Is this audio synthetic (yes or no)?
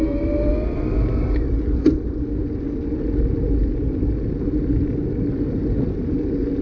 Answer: no